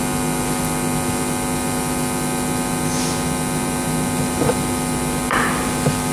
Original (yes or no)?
yes